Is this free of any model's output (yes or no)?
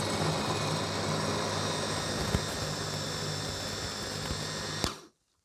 yes